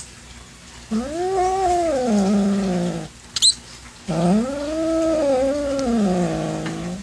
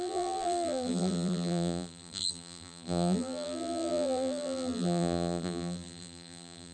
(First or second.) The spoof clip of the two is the second